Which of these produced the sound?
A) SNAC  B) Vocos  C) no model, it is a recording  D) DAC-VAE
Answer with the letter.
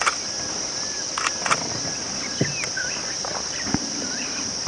C